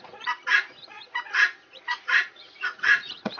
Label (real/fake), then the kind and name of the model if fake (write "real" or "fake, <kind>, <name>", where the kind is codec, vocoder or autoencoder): fake, vocoder, Vocos